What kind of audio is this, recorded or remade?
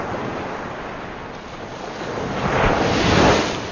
recorded